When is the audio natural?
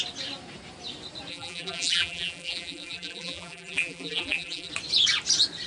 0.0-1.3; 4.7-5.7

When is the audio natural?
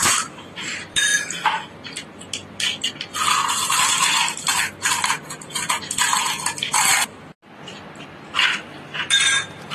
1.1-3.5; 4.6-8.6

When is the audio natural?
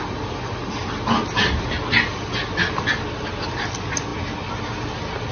0.0-5.3